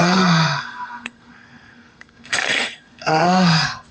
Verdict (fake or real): fake